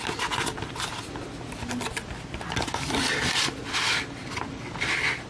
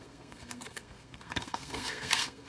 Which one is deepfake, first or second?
second